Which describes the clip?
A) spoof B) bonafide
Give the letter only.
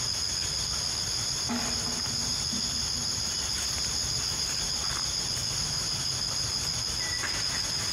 B